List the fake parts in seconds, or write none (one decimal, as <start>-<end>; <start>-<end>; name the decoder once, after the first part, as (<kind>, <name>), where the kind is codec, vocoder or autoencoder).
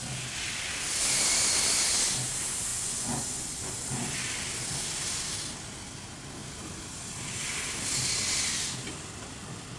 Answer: 2.7-3.7 (vocoder, Vocos)